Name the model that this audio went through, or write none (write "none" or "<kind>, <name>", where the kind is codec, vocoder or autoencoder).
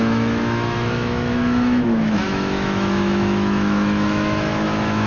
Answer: autoencoder, DAC-VAE